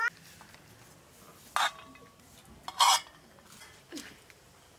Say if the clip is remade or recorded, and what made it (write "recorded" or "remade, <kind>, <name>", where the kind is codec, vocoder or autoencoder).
recorded